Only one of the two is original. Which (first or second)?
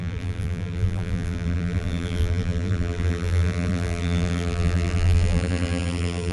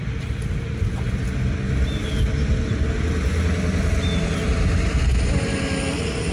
second